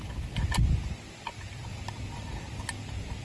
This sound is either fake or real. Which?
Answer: real